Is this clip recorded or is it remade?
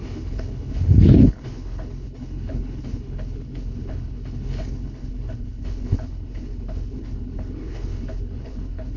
remade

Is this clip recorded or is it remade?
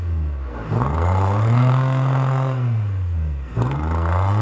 remade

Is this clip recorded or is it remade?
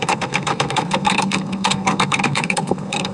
remade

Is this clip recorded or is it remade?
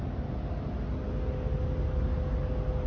recorded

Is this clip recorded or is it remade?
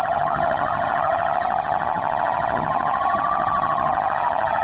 remade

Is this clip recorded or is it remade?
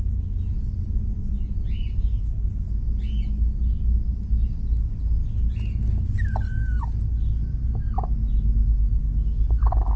recorded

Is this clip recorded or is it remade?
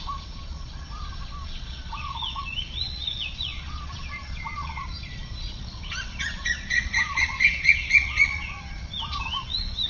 remade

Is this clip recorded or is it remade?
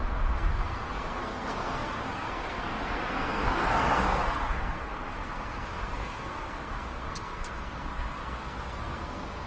remade